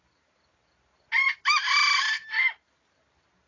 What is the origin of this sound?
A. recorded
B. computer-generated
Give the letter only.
A